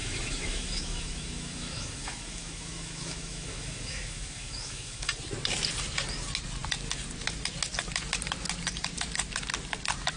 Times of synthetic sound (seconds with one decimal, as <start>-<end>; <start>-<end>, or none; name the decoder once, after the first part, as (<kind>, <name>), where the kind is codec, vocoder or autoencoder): 0.0-5.1 (autoencoder, DAC-VAE)